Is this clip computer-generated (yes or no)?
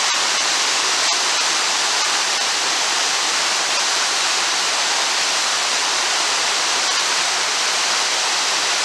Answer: yes